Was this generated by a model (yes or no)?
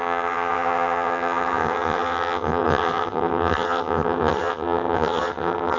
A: yes